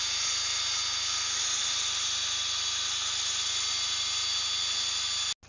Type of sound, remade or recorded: recorded